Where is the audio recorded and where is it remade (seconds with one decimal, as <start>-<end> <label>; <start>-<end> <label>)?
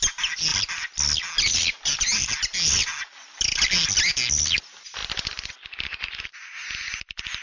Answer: 0.0-7.4 recorded